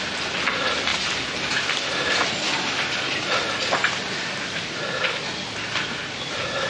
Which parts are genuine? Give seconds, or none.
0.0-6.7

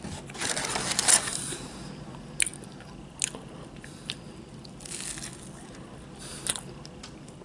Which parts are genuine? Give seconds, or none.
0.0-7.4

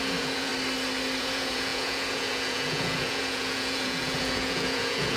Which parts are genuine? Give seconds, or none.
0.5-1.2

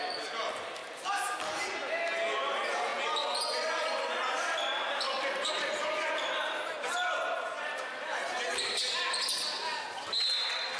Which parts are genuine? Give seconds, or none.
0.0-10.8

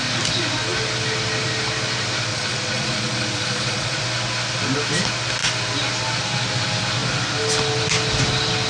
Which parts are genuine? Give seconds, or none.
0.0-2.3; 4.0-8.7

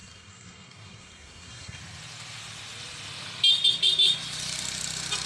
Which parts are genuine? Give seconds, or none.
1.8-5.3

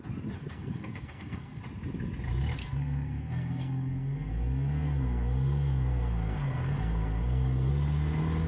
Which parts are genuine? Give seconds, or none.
0.0-0.4; 1.6-2.6; 7.7-8.5

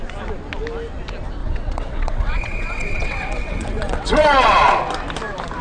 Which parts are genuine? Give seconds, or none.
0.0-1.4; 4.8-5.6